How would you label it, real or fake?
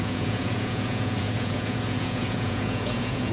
fake